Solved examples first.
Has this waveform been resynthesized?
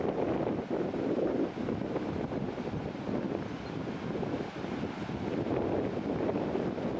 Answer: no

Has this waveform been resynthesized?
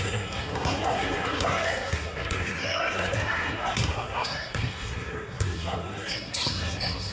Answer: yes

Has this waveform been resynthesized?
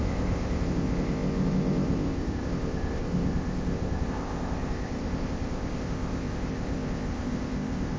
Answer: yes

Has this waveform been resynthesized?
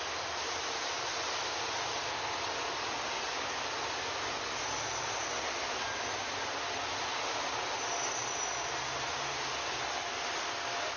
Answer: no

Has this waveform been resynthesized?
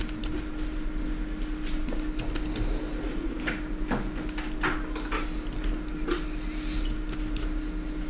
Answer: no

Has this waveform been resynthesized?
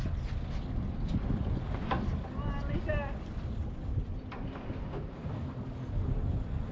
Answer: no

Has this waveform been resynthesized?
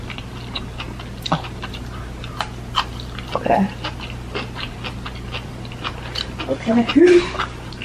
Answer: no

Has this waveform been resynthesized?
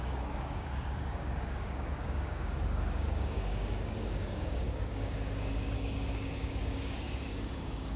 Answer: yes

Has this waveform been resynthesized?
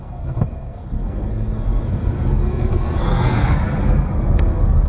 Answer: yes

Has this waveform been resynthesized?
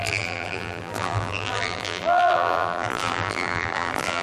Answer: yes